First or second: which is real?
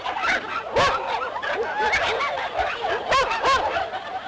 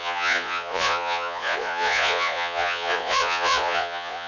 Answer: first